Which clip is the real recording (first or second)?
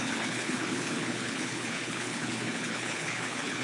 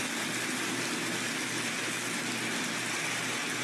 second